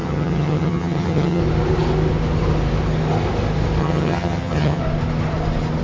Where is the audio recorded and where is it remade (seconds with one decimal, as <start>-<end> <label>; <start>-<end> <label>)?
0.0-1.4 remade; 1.4-3.8 recorded; 3.8-4.8 remade; 4.8-5.8 recorded